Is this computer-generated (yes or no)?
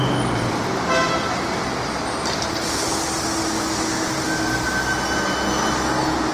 no